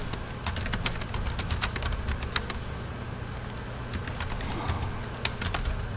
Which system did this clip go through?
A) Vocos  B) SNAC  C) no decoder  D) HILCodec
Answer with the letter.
C